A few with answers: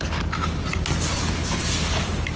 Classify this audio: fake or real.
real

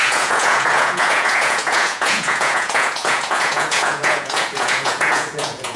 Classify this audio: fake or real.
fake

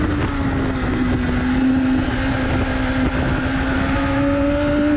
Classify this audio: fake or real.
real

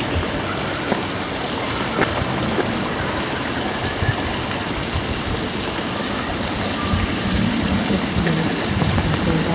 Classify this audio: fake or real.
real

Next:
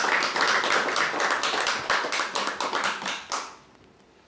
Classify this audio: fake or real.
real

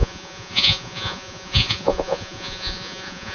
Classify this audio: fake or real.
fake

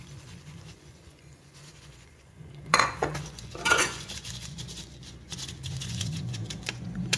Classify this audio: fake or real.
fake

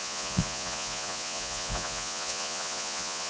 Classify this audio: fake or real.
fake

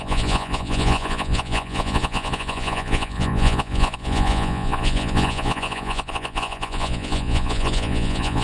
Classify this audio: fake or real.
fake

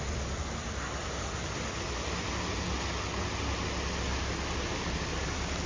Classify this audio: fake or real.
real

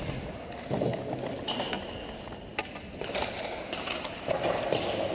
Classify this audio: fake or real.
real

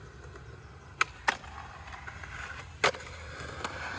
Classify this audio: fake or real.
real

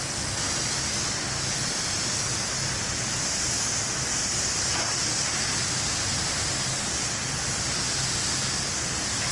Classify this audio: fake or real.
real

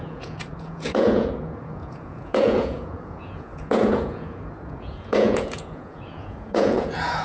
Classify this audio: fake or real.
fake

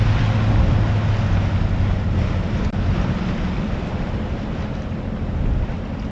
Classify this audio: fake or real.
real